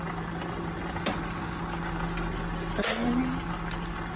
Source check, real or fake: real